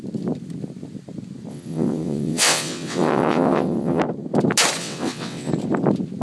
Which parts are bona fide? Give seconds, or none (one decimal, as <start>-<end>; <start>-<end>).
0.0-1.5; 4.0-4.8; 5.5-6.2